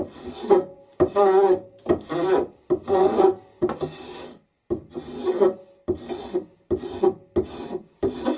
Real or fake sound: real